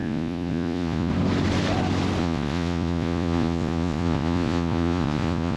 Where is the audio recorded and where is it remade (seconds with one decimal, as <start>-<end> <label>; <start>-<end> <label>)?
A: 0.0-1.1 remade; 1.1-2.2 recorded; 2.2-5.6 remade